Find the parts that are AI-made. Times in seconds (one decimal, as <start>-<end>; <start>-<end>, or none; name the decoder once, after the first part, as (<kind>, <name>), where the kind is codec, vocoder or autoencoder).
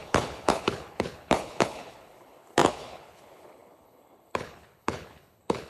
0.0-5.7 (codec, HILCodec)